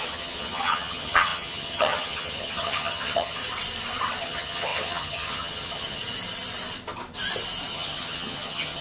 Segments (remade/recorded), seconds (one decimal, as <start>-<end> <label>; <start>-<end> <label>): 0.0-3.4 remade; 3.4-4.2 recorded; 4.2-6.0 remade; 6.0-7.7 recorded; 7.7-8.8 remade